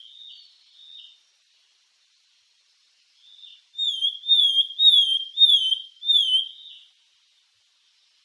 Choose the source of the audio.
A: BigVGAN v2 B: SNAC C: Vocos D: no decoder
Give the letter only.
D